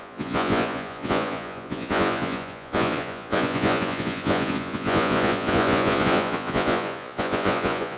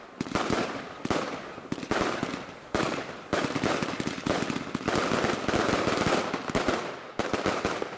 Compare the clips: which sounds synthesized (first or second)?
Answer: first